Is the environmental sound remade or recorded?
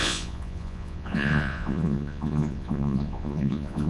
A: remade